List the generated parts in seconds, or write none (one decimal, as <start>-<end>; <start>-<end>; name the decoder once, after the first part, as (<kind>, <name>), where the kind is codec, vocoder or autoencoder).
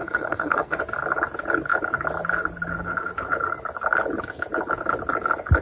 0.0-0.8 (codec, SNAC)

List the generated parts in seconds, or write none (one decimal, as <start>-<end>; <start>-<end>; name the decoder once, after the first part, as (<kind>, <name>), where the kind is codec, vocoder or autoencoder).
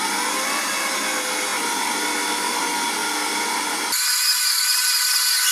none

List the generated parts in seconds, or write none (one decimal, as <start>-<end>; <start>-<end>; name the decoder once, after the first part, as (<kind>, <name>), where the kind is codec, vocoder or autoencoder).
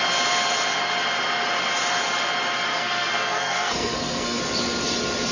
2.7-4.4 (codec, SNAC)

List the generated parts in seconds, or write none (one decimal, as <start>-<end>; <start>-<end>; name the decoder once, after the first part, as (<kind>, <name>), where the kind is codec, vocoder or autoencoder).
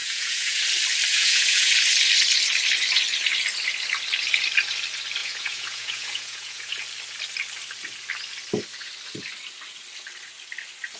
0.0-0.6 (vocoder, Vocos); 1.1-1.7; 5.2-6.8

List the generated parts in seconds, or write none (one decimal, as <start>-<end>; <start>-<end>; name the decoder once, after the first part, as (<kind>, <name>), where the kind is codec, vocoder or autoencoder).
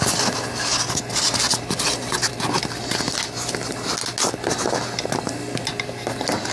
none